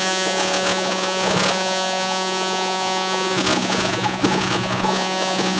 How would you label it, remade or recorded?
remade